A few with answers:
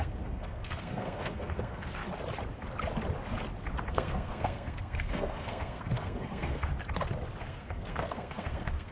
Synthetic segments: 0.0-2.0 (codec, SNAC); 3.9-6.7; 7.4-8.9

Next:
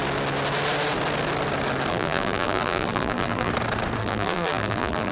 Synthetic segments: 1.9-3.5 (vocoder, BigVGAN v2); 4.0-5.1